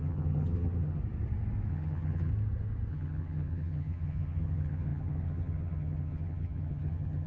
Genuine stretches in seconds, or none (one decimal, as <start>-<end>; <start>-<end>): 1.0-1.7; 2.3-2.9